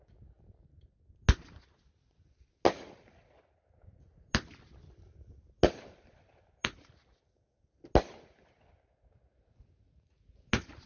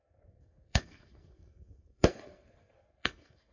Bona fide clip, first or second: first